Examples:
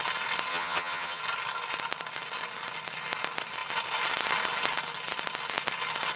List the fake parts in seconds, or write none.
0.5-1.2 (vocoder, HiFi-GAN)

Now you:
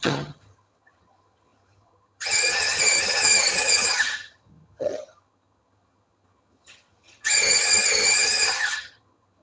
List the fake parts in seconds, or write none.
0.0-9.4 (vocoder, HiFi-GAN)